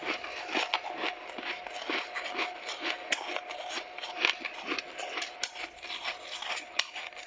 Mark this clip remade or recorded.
recorded